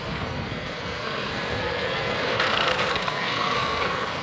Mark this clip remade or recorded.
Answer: remade